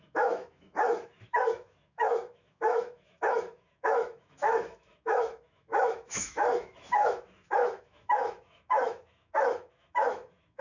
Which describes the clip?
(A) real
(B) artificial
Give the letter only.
B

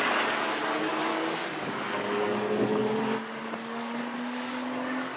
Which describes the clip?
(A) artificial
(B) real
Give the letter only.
A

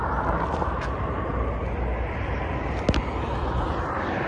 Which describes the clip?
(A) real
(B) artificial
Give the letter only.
A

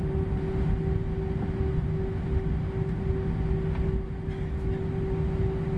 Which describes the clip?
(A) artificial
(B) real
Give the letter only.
B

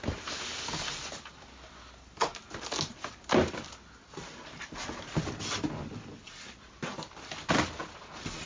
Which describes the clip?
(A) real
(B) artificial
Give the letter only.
A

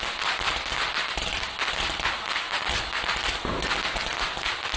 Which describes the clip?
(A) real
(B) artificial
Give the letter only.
A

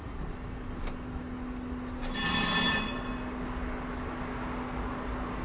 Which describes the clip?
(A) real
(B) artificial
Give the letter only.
A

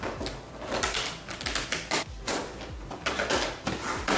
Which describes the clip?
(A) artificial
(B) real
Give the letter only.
A